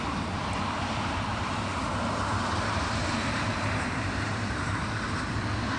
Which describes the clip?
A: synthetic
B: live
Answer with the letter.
A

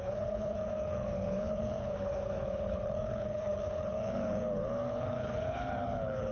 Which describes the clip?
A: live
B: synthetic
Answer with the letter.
B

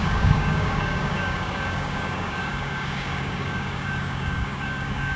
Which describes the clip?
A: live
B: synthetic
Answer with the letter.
B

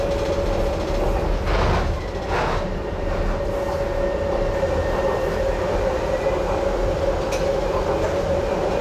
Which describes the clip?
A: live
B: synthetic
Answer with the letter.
A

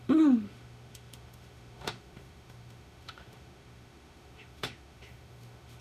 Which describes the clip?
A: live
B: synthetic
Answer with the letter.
B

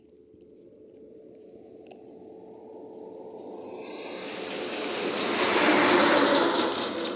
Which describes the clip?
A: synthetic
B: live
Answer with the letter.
B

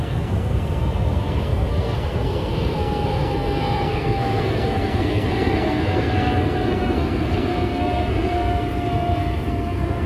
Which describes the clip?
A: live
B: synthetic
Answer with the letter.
B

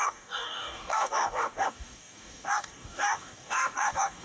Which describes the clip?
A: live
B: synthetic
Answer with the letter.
B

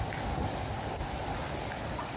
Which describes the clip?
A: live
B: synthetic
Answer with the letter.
A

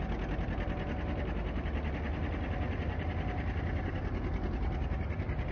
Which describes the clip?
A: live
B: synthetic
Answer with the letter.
A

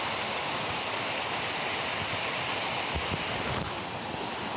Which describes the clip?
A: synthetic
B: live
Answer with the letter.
B